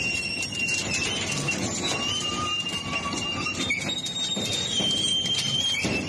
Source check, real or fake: real